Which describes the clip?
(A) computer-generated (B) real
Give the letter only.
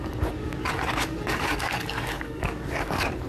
A